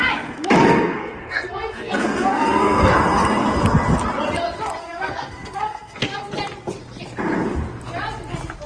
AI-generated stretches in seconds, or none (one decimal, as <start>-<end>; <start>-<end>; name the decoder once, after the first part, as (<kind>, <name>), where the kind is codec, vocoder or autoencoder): 0.6-2.9 (codec, SNAC); 4.8-6.3